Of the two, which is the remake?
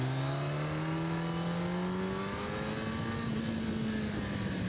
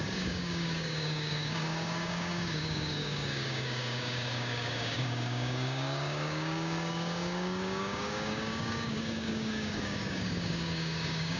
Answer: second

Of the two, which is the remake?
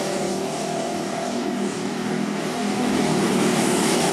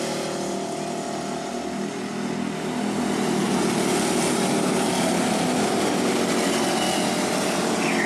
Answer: first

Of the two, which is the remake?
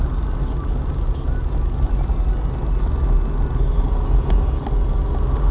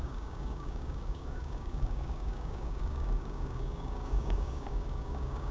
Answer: second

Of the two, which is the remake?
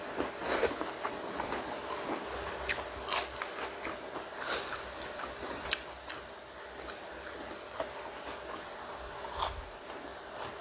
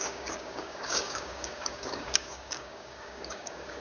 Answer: second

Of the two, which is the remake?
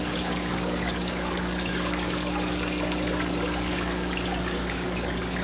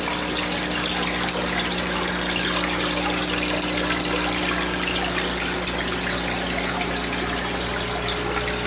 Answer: first